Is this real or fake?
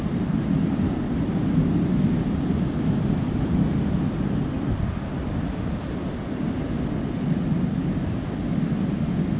real